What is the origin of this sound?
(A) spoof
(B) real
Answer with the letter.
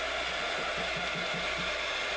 B